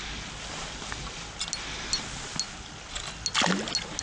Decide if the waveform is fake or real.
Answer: real